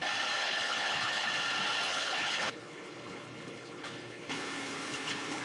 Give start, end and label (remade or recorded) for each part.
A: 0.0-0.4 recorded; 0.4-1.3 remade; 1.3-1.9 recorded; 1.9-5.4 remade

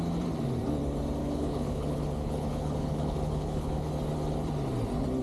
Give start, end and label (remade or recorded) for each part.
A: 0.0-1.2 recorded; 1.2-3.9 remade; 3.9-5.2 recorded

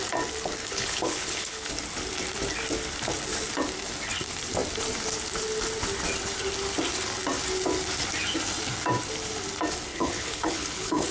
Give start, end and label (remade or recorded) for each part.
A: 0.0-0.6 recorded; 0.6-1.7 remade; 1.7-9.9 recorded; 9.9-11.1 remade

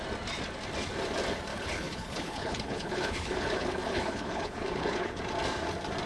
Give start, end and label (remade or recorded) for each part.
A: 0.0-1.5 recorded; 1.5-5.2 remade; 5.2-6.1 recorded